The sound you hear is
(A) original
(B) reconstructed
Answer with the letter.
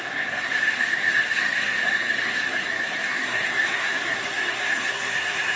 B